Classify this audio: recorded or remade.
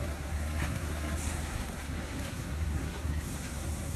remade